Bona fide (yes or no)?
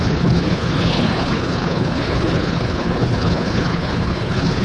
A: no